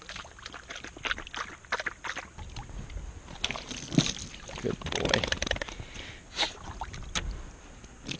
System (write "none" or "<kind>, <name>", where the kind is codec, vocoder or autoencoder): none